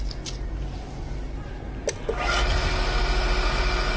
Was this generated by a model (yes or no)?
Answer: no